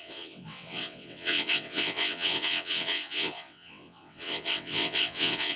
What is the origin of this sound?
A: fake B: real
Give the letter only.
A